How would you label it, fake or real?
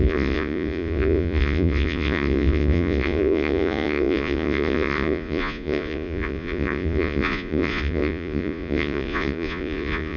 fake